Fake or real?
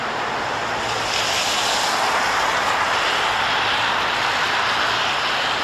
real